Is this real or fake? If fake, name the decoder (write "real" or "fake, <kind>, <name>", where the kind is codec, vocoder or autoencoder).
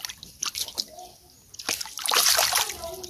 real